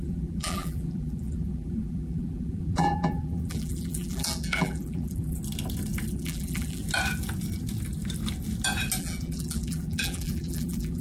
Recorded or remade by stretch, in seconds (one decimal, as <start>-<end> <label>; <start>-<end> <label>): 0.0-5.4 remade; 5.4-6.1 recorded; 6.1-6.8 remade; 6.8-9.0 recorded; 9.0-11.0 remade